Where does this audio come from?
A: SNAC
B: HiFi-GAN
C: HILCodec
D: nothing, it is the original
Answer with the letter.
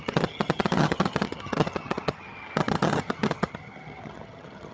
B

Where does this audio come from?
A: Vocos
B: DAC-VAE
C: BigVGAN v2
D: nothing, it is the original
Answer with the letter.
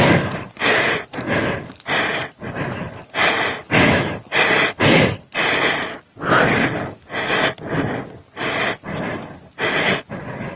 D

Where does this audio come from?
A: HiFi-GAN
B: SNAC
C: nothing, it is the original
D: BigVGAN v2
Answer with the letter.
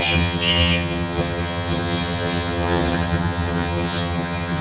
A